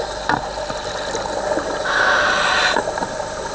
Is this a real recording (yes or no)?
yes